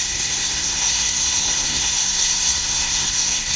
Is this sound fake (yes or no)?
yes